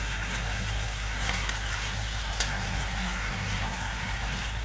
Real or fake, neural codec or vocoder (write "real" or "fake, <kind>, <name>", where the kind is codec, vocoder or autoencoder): fake, codec, SNAC